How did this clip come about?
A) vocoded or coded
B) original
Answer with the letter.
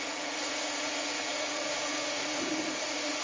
A